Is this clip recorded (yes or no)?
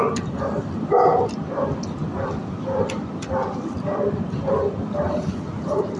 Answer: yes